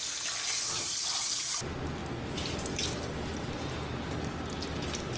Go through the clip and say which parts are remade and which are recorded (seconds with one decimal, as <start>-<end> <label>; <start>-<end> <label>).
0.0-5.2 recorded